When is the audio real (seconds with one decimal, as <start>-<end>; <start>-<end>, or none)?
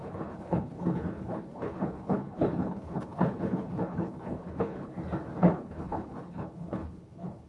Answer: 4.9-5.4